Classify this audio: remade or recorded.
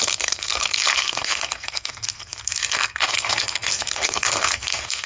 remade